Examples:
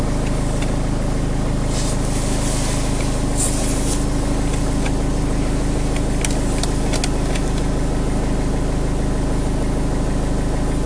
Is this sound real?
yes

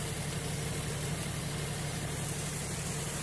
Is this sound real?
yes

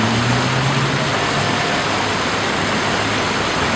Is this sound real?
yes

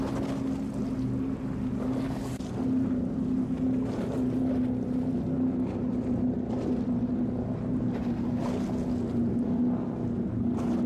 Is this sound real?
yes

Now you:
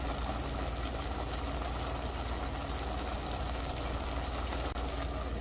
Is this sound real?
yes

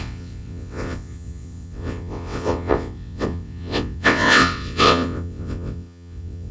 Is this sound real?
no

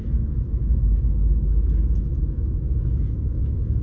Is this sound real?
no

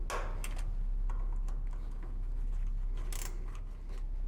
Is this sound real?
yes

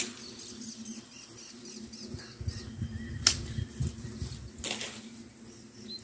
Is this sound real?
yes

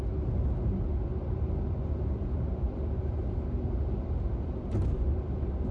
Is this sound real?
yes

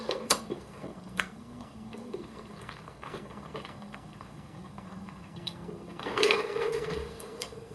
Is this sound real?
no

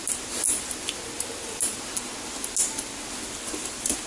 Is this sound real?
yes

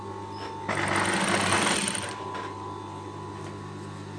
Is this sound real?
yes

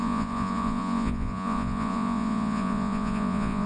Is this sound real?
no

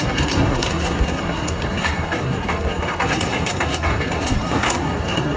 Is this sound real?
no